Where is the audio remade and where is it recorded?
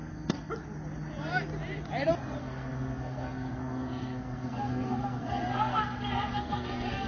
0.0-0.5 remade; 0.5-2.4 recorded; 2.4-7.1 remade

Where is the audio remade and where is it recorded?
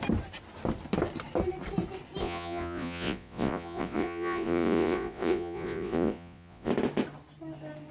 0.0-2.2 recorded; 2.2-6.7 remade; 6.7-7.9 recorded